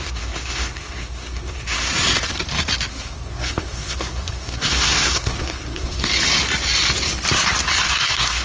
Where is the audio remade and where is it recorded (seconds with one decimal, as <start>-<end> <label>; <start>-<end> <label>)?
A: 0.0-1.9 remade; 1.9-2.9 recorded; 2.9-6.1 remade; 6.1-7.9 recorded; 7.9-8.4 remade